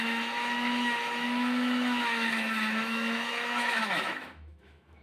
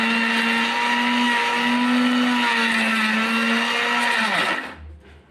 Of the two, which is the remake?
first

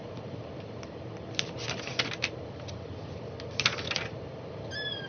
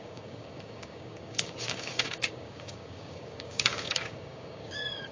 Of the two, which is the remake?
second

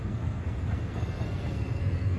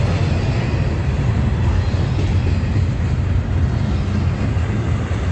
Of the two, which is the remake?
first